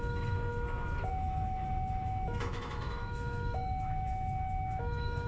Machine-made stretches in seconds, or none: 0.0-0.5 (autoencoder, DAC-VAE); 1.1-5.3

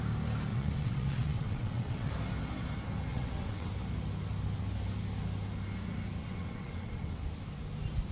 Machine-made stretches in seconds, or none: 0.5-2.1 (vocoder, WaveNeXt); 3.1-3.7; 6.2-7.2